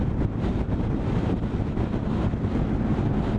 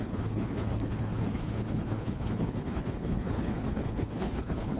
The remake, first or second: second